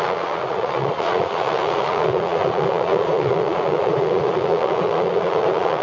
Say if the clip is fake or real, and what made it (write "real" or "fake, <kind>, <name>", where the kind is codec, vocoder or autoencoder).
fake, vocoder, Vocos